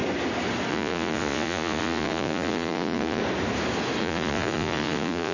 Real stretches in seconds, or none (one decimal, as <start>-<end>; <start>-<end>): 0.0-0.7; 3.2-4.0

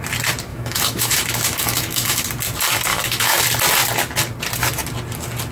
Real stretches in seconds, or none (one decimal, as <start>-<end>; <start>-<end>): 0.0-0.5; 2.3-2.9; 3.4-5.5

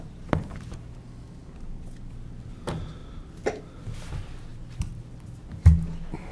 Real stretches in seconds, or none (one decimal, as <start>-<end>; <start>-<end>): 0.0-6.3

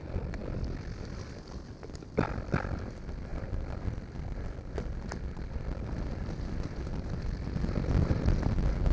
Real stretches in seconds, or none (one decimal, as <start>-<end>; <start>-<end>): 0.0-8.9

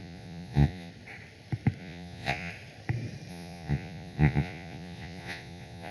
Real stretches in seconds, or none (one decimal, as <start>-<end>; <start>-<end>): 0.9-1.8; 2.5-3.3